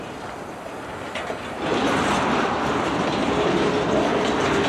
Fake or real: real